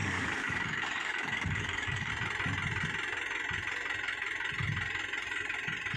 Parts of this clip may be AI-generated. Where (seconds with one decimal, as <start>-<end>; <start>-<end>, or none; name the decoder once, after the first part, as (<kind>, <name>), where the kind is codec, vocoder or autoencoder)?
0.0-2.1 (codec, DAC)